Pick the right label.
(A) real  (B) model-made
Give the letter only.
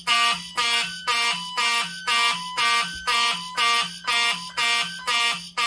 A